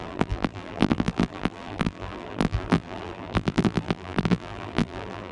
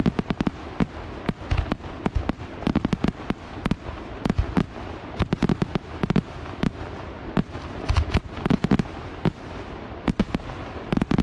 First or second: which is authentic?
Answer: second